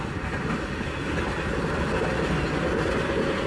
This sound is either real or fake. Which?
real